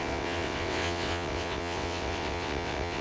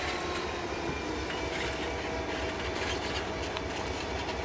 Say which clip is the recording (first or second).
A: second